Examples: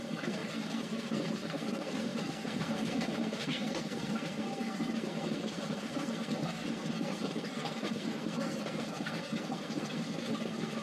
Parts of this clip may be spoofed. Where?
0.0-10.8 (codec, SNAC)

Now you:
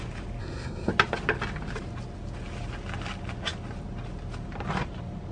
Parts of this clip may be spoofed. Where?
0.4-0.9 (codec, SNAC)

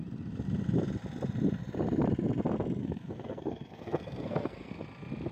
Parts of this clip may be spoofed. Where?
2.8-4.7 (codec, SNAC)

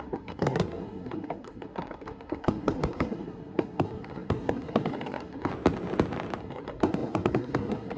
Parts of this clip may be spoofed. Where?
0.0-5.5 (codec, SNAC); 6.4-8.0

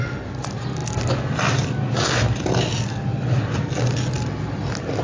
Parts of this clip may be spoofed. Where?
none

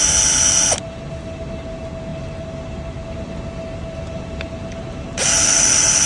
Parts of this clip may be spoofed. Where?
none

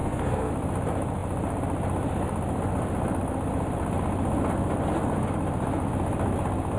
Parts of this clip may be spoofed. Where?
0.0-0.5 (codec, SNAC)